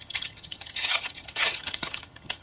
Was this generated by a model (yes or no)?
yes